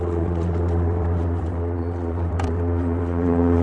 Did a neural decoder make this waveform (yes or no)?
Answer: yes